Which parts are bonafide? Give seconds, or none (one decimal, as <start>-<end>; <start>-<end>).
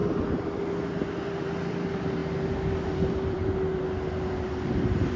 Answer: 0.0-0.9; 2.2-2.9